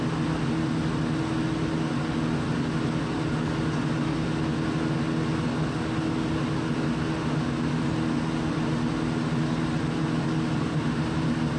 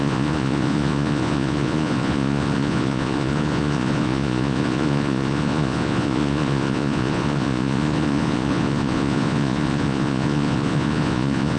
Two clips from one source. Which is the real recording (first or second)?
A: first